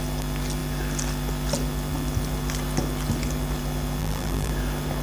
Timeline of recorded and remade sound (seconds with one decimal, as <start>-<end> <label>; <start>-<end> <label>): 0.0-4.0 recorded; 4.0-4.5 remade; 4.5-5.0 recorded